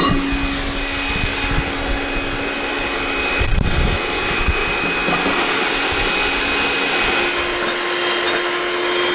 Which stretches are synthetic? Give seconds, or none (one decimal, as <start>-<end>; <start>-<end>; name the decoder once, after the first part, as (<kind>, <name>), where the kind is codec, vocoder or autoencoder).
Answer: none